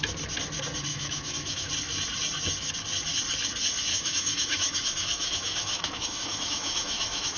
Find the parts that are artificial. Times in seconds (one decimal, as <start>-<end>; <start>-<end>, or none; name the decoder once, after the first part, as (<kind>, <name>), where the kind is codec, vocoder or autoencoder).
0.9-1.7 (autoencoder, DAC-VAE); 3.9-7.4